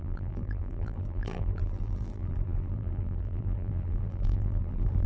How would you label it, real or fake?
fake